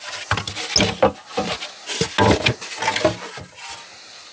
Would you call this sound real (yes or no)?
yes